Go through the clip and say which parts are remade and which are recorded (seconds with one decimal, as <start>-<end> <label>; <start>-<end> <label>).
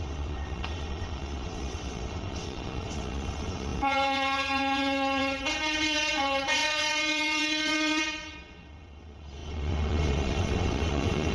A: 0.0-11.3 remade